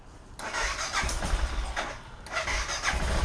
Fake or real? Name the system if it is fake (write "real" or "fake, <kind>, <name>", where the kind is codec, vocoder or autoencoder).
real